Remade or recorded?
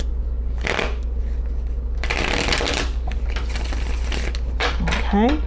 recorded